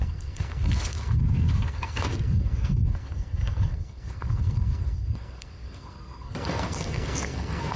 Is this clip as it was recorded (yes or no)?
no